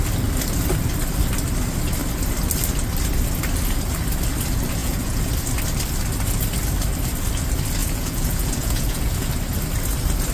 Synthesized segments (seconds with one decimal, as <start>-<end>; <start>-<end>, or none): 4.8-5.3; 7.8-9.3